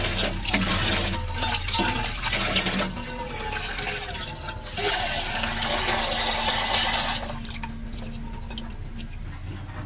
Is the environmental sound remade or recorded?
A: recorded